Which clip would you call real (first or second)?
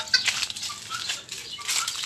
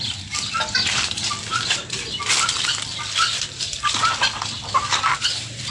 first